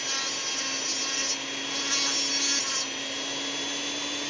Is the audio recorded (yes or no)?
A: yes